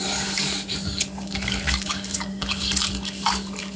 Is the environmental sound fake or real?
fake